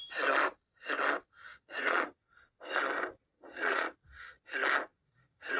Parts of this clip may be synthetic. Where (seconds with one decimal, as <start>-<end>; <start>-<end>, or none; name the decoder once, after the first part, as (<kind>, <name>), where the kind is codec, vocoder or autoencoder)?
1.5-2.2 (vocoder, Vocos); 3.3-4.4; 4.9-5.6